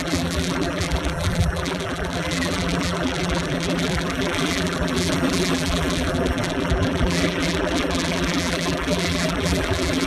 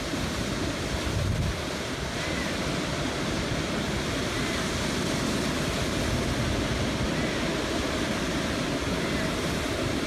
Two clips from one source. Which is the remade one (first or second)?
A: first